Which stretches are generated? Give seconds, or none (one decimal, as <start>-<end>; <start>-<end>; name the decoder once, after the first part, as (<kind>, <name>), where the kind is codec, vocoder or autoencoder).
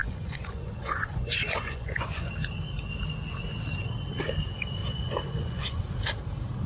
0.0-2.3 (vocoder, Vocos); 4.8-5.8